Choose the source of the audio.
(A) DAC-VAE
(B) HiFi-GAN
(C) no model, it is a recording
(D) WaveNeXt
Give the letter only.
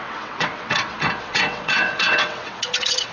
D